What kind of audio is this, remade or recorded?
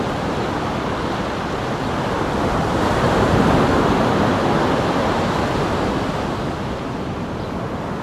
recorded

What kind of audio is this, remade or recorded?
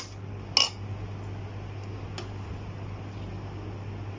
recorded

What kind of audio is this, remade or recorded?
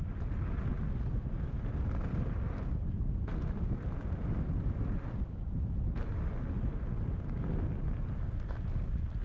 recorded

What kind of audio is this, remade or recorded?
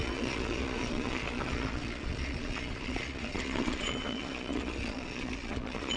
remade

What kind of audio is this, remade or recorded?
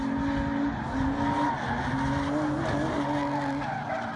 recorded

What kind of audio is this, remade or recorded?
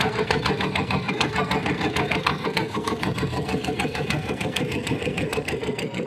remade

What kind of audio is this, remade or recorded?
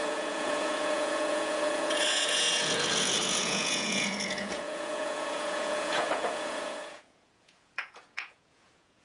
remade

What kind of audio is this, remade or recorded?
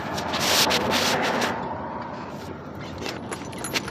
recorded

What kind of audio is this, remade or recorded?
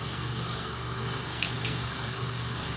remade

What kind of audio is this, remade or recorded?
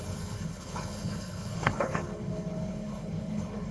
remade